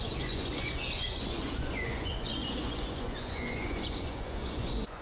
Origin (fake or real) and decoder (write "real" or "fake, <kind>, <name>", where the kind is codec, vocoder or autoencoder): fake, vocoder, Vocos